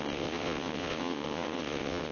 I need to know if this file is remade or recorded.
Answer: remade